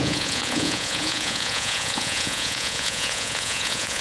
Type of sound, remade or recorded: remade